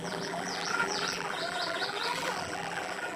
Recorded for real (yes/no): no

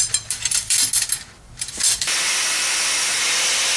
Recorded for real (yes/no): yes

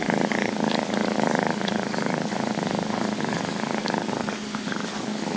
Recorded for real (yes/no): no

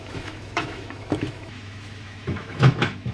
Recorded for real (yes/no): no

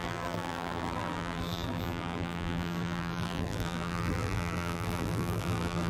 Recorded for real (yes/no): no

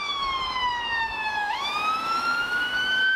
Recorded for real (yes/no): no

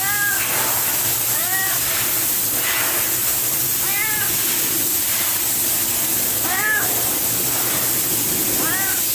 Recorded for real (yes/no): yes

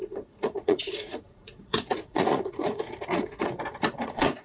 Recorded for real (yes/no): no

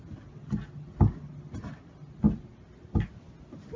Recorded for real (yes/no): yes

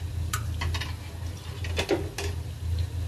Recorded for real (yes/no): yes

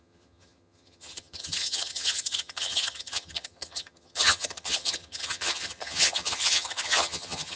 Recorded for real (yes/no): no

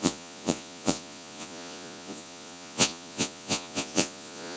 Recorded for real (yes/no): no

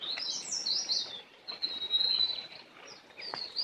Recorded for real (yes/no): yes